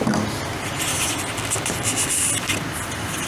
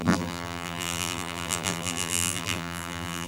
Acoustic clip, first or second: first